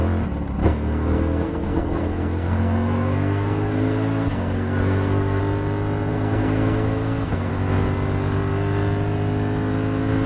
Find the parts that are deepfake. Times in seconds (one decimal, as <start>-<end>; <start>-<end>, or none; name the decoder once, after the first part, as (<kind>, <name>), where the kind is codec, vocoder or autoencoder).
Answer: 0.6-5.4 (codec, SNAC); 6.1-7.5